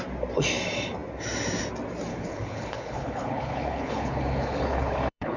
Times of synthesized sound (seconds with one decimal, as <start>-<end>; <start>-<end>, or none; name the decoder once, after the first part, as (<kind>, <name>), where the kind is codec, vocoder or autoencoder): 2.1-5.4 (codec, HILCodec)